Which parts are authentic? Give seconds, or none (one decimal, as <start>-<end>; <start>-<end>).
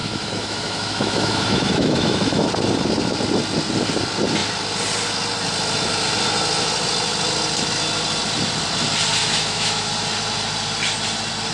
2.5-9.2; 9.9-11.5